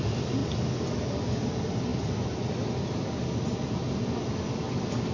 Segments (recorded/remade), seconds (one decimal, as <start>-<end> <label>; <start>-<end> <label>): 0.0-5.1 recorded